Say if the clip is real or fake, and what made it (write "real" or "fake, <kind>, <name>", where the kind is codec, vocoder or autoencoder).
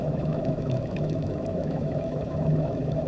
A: fake, autoencoder, DAC-VAE